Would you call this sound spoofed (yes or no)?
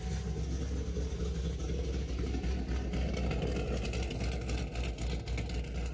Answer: no